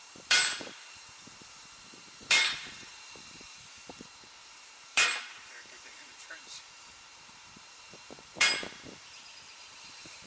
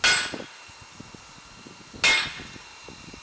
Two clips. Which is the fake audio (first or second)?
first